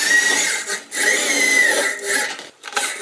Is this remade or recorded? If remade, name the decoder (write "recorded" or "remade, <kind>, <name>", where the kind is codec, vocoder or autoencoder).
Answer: recorded